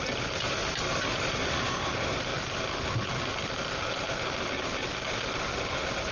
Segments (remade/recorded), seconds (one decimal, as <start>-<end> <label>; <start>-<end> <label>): 0.0-0.6 remade; 0.6-1.6 recorded; 1.6-2.3 remade; 2.3-6.1 recorded